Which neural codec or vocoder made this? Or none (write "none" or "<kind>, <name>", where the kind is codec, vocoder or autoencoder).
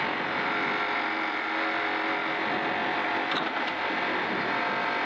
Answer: none